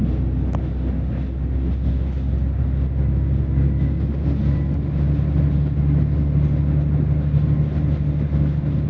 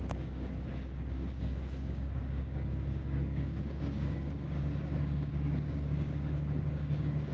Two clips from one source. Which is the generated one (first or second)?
second